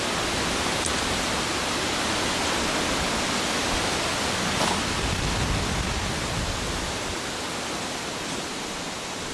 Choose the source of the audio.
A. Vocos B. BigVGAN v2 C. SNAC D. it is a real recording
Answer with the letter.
D